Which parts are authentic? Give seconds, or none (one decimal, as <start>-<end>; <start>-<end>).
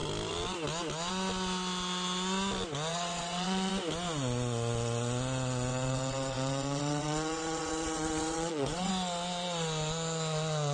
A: 0.0-2.9; 3.7-5.7; 8.9-10.7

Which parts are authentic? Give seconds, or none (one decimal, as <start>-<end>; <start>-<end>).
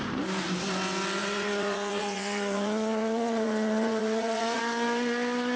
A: 0.0-1.2; 4.6-5.6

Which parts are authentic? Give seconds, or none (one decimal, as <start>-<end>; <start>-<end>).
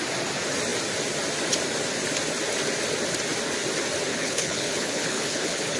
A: 0.0-4.1